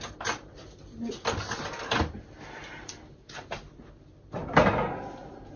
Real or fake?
real